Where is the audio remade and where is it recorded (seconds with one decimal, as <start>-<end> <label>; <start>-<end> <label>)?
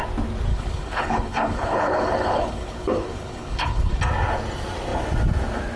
0.0-0.5 recorded; 0.5-4.0 remade; 4.0-5.8 recorded